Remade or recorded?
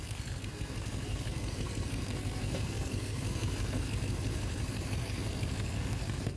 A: remade